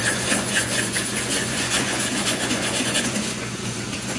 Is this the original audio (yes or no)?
no